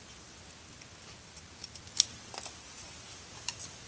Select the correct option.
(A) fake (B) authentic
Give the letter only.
B